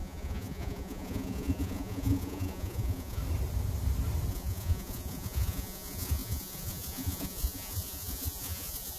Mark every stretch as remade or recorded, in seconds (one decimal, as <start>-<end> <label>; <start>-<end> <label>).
0.0-3.2 remade; 3.2-4.3 recorded; 4.3-9.0 remade